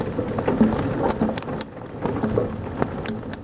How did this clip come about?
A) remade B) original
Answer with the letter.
B